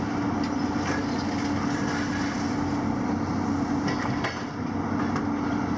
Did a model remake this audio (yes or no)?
no